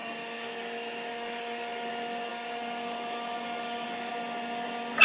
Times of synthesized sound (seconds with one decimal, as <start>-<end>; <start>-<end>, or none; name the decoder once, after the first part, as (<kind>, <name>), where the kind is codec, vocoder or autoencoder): 0.0-0.5 (codec, DAC); 1.1-1.9; 2.3-4.1